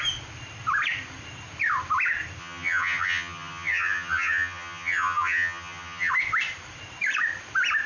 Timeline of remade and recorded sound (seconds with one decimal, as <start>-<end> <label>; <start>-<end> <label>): 0.0-2.4 recorded; 2.4-6.1 remade; 6.1-7.9 recorded